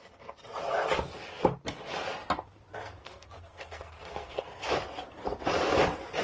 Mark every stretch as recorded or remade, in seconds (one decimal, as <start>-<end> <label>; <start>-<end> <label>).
0.0-2.7 recorded; 2.7-4.7 remade; 4.7-6.2 recorded